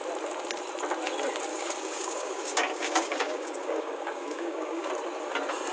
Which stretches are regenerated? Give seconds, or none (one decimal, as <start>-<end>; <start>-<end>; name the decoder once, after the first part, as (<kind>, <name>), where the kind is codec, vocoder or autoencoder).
1.5-4.9 (codec, DAC)